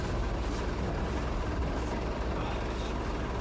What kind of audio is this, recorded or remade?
recorded